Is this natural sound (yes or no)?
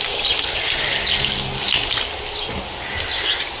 yes